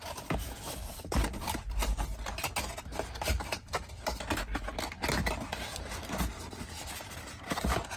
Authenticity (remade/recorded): recorded